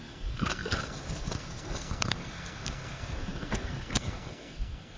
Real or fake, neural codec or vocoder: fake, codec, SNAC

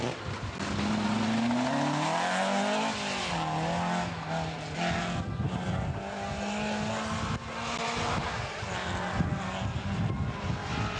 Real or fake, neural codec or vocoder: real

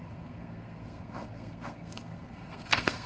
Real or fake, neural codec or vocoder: fake, codec, SNAC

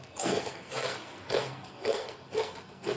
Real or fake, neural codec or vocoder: fake, codec, SNAC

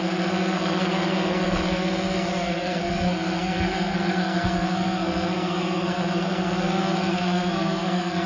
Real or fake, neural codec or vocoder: fake, codec, SNAC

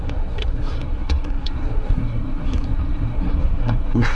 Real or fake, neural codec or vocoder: fake, codec, SNAC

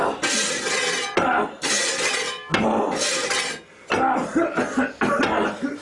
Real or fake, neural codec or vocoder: real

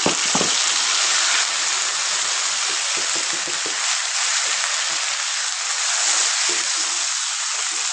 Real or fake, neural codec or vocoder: real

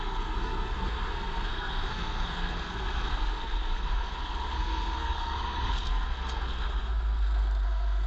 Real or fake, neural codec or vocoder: fake, codec, SNAC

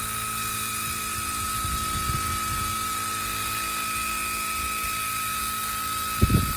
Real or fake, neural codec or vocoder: real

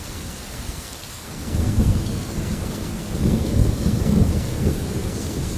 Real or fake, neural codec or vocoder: fake, codec, SNAC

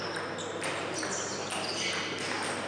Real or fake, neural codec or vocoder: real